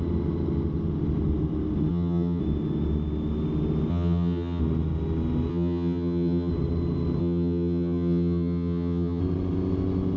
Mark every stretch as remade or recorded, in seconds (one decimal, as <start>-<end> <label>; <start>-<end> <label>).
0.0-1.9 recorded; 1.9-2.4 remade; 2.4-3.9 recorded; 3.9-4.6 remade; 4.6-5.5 recorded; 5.5-6.5 remade; 6.5-7.2 recorded; 7.2-9.2 remade; 9.2-10.2 recorded